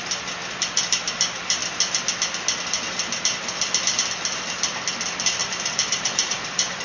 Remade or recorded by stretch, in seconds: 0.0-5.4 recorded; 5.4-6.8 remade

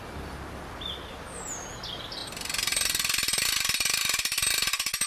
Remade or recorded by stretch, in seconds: 0.0-5.1 recorded

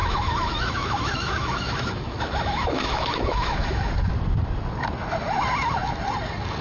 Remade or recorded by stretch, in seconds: 0.0-3.9 remade; 3.9-6.6 recorded

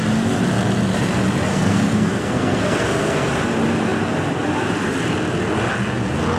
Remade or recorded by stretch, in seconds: 0.0-1.5 recorded; 1.5-3.3 remade; 3.3-6.4 recorded

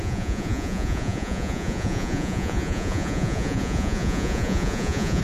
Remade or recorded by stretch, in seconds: 0.0-5.2 remade

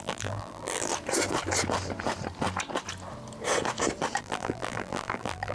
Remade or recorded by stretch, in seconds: 0.0-0.9 remade; 0.9-4.2 recorded; 4.2-5.5 remade

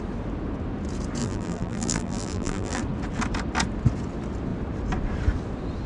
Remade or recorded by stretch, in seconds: 0.0-1.2 recorded; 1.2-2.8 remade; 2.8-5.9 recorded